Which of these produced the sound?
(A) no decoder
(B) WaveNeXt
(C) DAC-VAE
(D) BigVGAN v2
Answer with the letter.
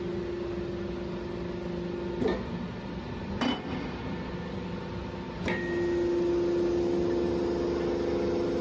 A